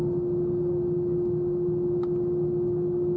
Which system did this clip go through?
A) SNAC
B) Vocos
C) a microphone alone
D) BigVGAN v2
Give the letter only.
C